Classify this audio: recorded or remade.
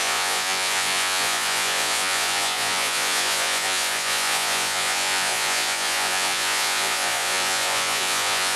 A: remade